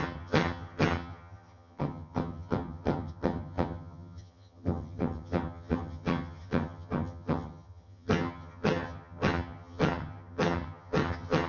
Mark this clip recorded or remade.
remade